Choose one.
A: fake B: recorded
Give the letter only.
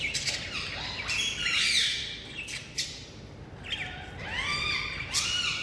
B